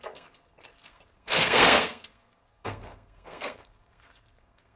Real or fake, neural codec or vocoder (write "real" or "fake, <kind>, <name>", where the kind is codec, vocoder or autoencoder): fake, codec, SNAC